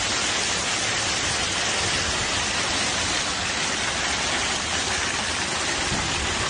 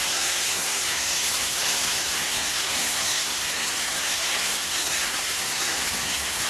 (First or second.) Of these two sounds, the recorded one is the first